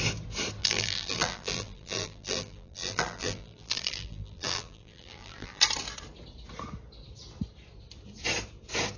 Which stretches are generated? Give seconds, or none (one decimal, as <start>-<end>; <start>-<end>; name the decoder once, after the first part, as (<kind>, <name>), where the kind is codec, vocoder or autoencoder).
0.6-5.6 (vocoder, BigVGAN v2)